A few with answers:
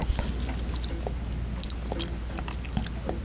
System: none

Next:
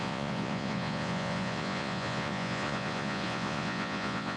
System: vocoder, Vocos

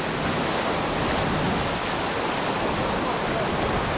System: none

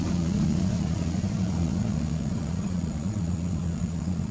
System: vocoder, Vocos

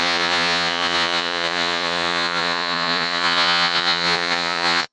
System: vocoder, Vocos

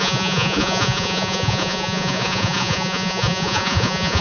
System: vocoder, Vocos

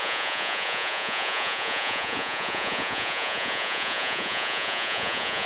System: vocoder, Vocos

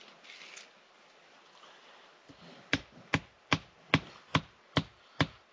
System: none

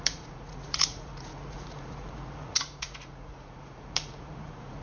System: vocoder, Vocos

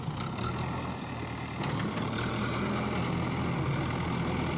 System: none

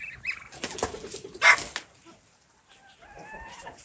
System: none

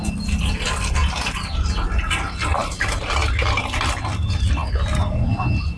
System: none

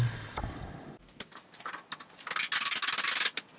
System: none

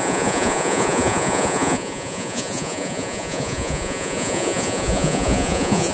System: vocoder, Vocos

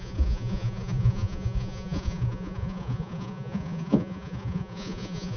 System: vocoder, Vocos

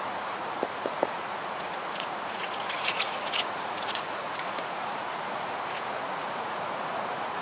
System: vocoder, Vocos